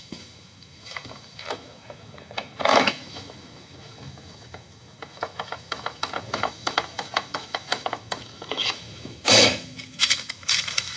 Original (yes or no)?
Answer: no